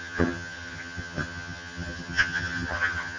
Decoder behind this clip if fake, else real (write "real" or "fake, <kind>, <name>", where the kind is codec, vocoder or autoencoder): fake, vocoder, HiFi-GAN